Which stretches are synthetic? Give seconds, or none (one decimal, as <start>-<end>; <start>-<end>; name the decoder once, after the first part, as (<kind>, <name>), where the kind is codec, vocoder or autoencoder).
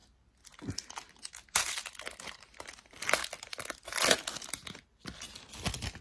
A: none